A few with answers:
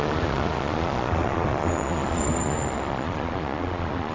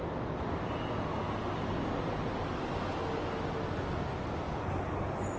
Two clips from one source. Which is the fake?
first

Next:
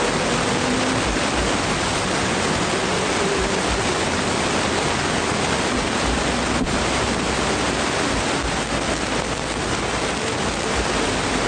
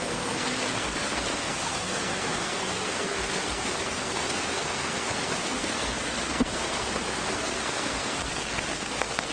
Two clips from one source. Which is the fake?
second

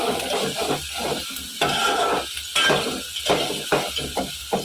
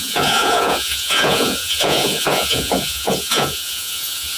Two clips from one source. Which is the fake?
second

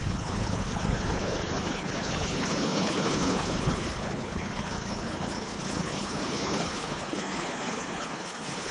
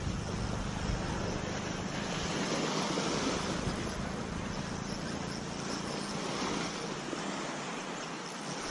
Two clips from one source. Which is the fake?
first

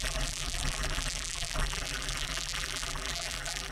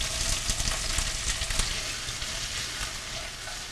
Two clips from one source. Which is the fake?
first